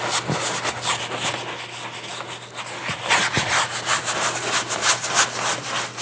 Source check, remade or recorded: recorded